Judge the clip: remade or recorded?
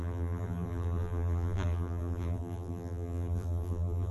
remade